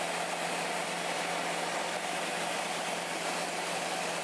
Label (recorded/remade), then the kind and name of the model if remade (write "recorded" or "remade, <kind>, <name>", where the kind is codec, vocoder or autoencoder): recorded